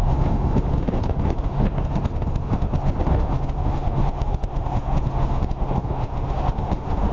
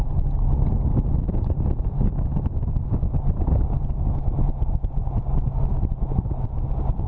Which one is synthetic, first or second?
first